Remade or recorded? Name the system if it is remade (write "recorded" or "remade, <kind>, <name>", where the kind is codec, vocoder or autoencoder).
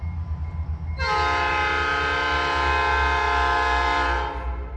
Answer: recorded